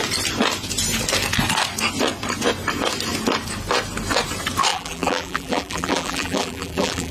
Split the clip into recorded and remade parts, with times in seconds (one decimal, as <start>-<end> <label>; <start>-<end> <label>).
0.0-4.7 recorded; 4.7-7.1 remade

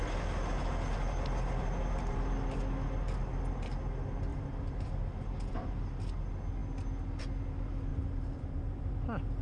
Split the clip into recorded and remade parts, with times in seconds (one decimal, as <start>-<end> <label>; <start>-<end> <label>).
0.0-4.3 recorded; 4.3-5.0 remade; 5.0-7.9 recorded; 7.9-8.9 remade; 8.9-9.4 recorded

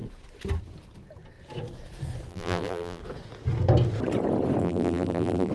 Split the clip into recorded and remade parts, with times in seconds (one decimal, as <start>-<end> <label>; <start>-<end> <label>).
0.0-2.3 recorded; 2.3-3.0 remade; 3.0-4.6 recorded; 4.6-5.5 remade